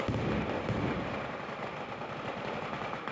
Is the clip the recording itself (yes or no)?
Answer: yes